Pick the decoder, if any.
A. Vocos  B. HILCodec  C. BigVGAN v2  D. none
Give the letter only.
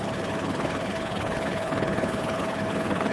B